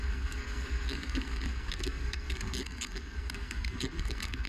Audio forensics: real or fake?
fake